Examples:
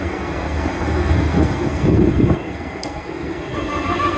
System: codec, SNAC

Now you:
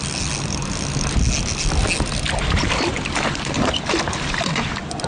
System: none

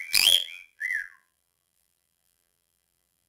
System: vocoder, BigVGAN v2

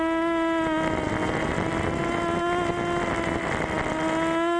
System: none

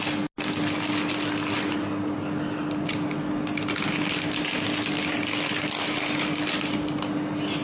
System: none